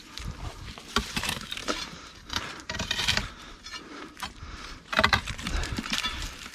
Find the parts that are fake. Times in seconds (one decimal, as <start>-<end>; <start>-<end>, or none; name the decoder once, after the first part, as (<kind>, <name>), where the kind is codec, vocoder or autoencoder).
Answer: 0.0-6.5 (vocoder, BigVGAN v2)